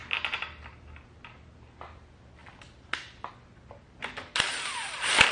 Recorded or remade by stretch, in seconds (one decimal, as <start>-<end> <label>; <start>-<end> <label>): 0.0-5.3 recorded